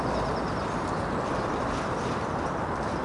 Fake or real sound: real